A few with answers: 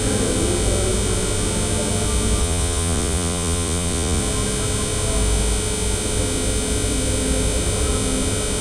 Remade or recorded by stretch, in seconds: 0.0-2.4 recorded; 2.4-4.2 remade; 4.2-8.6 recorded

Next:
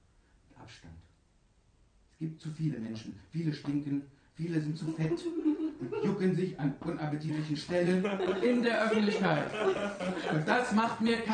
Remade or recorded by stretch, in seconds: 0.0-1.3 recorded; 1.3-5.8 remade; 5.8-7.0 recorded; 7.0-11.3 remade

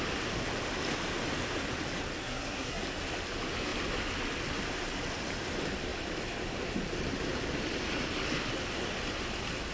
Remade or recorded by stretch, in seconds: 0.0-2.2 recorded; 2.2-2.8 remade; 2.8-9.7 recorded

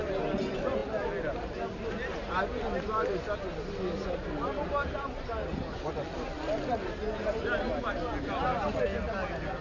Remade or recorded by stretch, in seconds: 0.0-9.6 recorded